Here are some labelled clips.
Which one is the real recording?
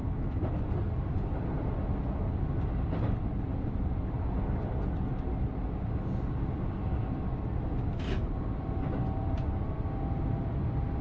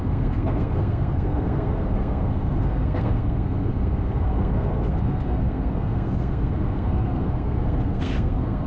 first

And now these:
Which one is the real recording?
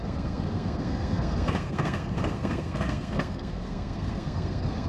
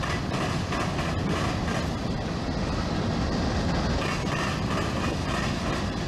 second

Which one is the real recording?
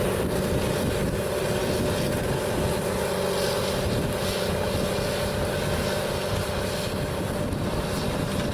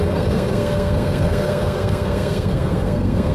first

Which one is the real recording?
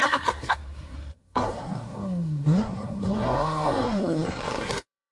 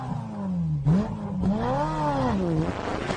second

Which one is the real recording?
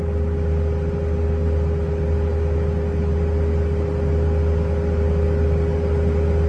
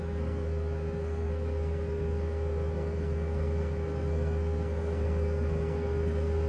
first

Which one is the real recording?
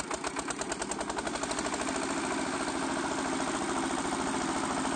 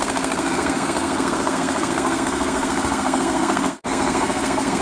first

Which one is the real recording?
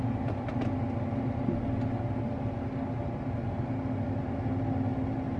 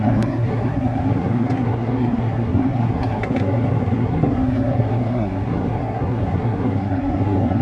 first